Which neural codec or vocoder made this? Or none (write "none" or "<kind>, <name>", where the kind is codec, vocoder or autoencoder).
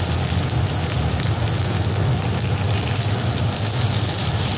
none